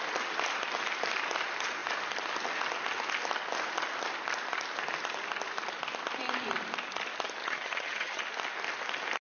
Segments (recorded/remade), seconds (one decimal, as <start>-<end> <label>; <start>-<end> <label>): 0.0-7.4 recorded; 7.4-8.2 remade; 8.2-9.2 recorded